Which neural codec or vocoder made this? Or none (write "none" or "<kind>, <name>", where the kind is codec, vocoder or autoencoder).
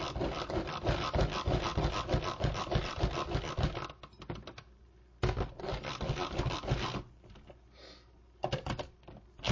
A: none